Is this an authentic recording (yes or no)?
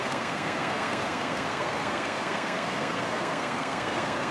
no